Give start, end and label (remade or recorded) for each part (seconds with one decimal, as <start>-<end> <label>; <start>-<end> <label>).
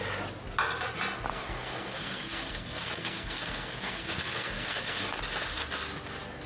0.0-1.3 recorded; 1.3-5.2 remade; 5.2-6.5 recorded